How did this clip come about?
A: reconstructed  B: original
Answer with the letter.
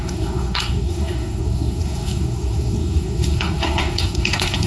A